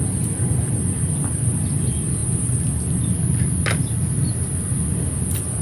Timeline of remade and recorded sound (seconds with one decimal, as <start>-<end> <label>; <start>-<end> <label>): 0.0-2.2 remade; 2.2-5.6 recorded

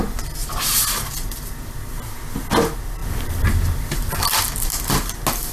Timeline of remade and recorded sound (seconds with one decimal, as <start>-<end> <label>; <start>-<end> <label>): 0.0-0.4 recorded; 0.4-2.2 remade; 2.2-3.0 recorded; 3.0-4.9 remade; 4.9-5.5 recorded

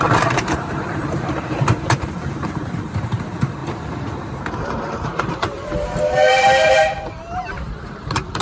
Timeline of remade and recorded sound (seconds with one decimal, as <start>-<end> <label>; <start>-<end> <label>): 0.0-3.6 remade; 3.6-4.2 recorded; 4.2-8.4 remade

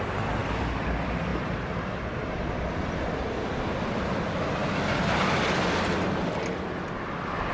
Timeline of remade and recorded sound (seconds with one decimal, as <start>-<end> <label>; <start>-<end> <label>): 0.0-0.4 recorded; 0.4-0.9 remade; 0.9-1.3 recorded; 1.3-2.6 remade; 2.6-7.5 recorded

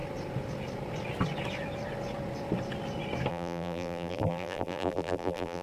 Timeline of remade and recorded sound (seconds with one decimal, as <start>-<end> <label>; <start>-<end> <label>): 0.0-3.3 recorded; 3.3-5.6 remade

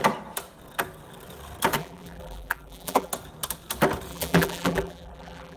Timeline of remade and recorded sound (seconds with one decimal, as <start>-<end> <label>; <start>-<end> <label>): 0.0-1.8 recorded; 1.8-3.1 remade; 3.1-4.1 recorded; 4.1-5.6 remade

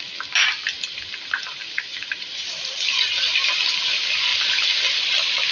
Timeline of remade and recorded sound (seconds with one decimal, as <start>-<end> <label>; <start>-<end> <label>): 0.0-1.6 recorded; 1.6-2.5 remade; 2.5-5.5 recorded